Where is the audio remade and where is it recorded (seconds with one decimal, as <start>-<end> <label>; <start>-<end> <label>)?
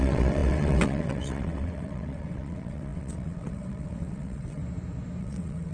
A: 0.0-4.6 remade; 4.6-5.2 recorded; 5.2-5.7 remade